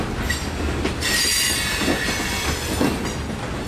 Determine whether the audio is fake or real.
real